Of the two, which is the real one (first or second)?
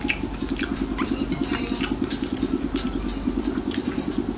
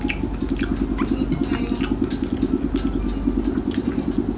second